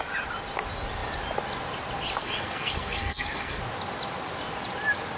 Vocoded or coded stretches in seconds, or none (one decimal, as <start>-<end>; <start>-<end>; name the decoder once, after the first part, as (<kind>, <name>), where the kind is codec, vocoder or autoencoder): 2.2-3.6 (codec, SNAC)